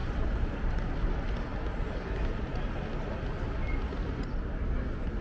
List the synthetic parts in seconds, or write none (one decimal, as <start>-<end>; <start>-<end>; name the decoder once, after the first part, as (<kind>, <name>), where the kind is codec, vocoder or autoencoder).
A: 0.0-0.8 (vocoder, BigVGAN v2)